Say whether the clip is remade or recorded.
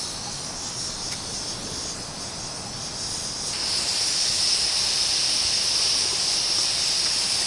recorded